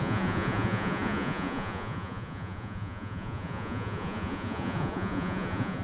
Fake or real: fake